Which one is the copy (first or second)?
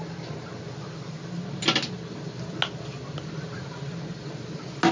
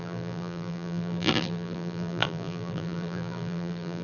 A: second